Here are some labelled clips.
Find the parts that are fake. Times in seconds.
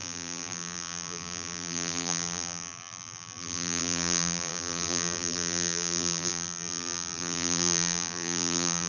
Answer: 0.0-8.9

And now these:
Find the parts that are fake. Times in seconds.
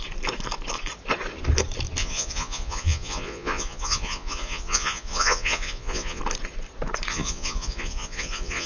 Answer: 2.0-6.2; 7.1-8.7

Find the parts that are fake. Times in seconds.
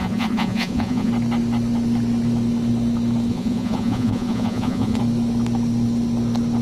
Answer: 0.0-1.1; 3.3-5.0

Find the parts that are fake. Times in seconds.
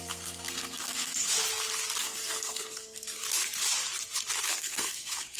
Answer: 0.0-1.2; 2.0-3.2; 4.5-5.4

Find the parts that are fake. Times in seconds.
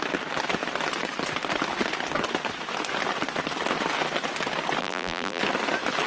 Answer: 4.8-5.4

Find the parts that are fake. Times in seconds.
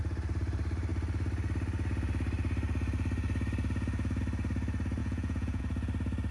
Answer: 5.0-5.6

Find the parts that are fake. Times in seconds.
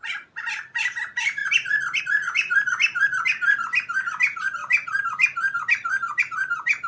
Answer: none